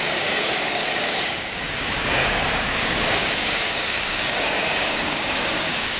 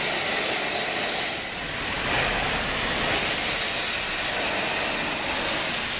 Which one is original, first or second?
second